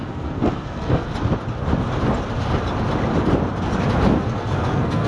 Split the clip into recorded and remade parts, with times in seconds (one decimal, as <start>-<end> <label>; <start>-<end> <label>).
0.0-1.1 remade; 1.1-4.2 recorded; 4.2-5.1 remade